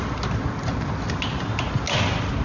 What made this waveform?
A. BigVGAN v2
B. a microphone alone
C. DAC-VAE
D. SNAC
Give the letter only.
B